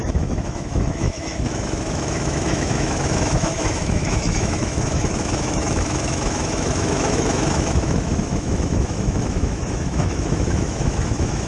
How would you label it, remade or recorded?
remade